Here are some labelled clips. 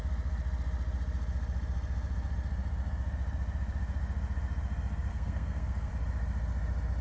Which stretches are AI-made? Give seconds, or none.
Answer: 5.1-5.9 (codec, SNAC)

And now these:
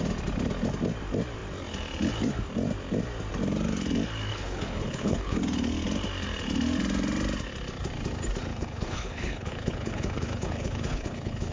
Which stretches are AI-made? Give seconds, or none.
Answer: 4.3-5.4 (codec, HILCodec); 8.5-11.5

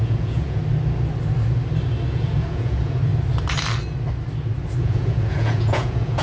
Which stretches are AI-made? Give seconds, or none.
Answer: 0.0-0.6 (vocoder, Vocos); 2.1-3.0; 4.8-6.2

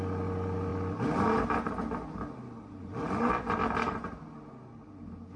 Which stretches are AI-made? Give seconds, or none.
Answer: none

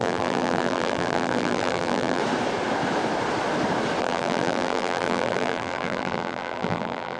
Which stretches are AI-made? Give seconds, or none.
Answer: 0.0-2.2 (vocoder, BigVGAN v2); 4.0-7.2

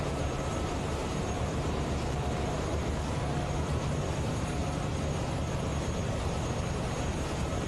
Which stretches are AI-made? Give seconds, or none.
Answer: 0.0-4.6 (vocoder, BigVGAN v2); 6.1-7.7

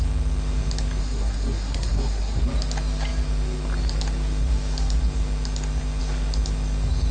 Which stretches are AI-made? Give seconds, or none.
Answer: 1.0-2.4 (codec, SNAC)